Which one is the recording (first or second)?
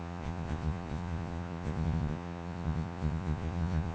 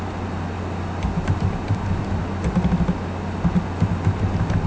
second